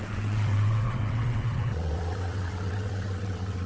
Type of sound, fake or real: fake